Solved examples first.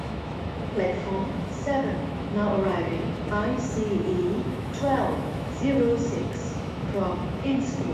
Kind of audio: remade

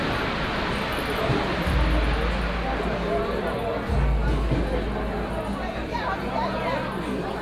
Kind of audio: recorded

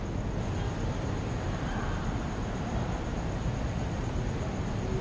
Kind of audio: recorded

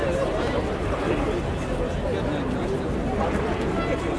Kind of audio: recorded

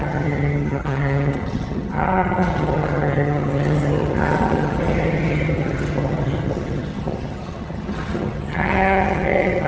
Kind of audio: remade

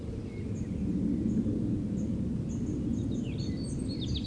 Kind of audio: recorded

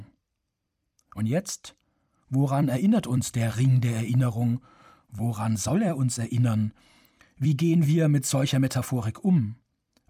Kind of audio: remade